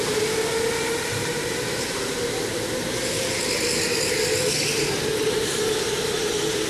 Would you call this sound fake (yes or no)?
no